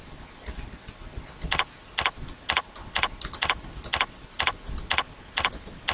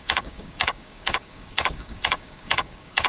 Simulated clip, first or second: second